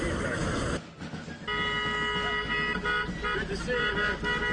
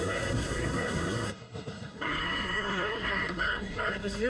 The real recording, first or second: first